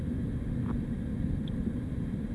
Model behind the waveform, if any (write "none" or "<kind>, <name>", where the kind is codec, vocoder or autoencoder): none